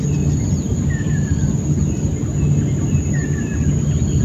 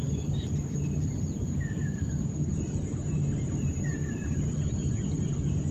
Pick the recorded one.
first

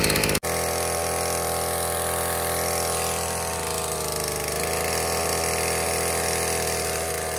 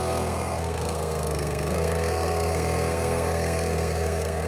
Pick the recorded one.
first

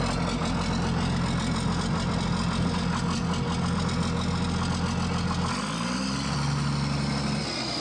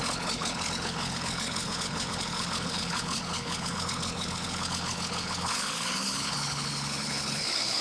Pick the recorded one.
first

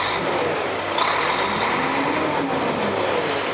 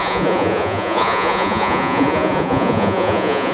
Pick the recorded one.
first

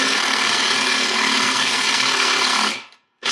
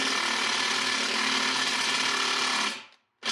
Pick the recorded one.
second